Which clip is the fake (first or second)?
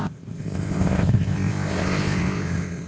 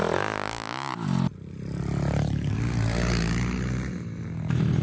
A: first